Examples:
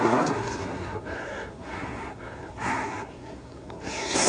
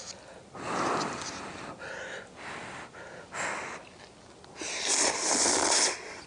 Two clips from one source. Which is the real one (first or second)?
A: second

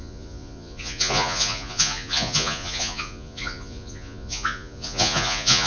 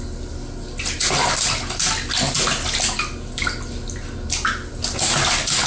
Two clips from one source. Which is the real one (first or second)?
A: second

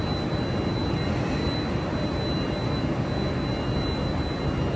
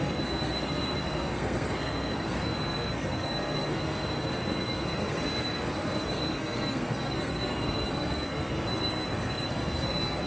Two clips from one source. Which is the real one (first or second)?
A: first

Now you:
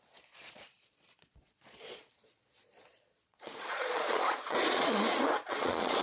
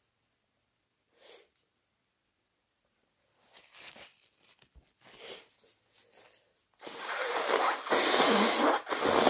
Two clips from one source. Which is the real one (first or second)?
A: second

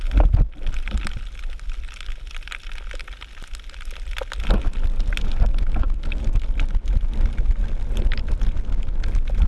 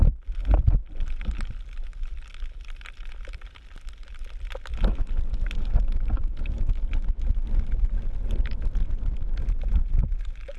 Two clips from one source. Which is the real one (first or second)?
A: first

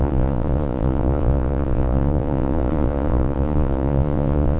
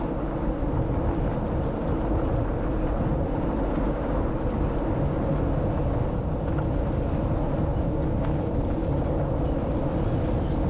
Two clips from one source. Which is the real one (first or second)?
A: second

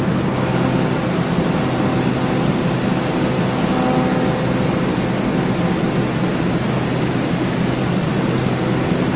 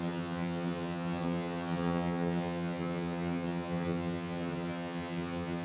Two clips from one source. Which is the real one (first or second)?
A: first